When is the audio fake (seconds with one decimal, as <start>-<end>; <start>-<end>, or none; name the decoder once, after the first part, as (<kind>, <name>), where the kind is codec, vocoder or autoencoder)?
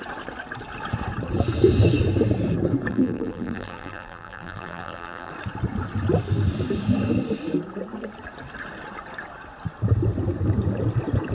2.9-5.3 (vocoder, BigVGAN v2)